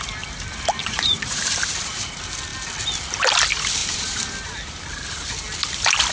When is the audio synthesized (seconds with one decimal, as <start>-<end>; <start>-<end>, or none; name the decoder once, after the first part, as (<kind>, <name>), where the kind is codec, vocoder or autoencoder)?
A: 0.8-1.4 (vocoder, Vocos)